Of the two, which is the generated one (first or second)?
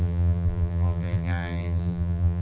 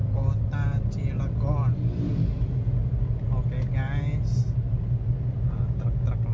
first